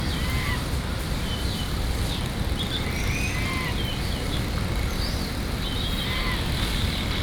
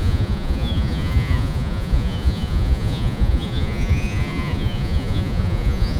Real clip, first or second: first